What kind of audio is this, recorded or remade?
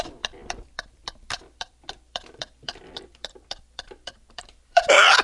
remade